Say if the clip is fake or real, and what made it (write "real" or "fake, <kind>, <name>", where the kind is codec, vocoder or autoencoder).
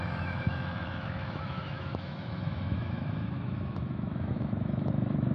fake, autoencoder, DAC-VAE